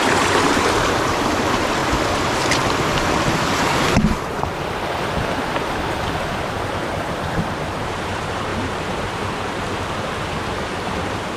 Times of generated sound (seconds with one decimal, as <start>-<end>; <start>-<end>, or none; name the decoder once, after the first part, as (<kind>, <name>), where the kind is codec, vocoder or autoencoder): 0.0-1.8 (vocoder, BigVGAN v2); 6.5-11.4